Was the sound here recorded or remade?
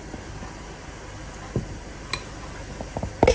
recorded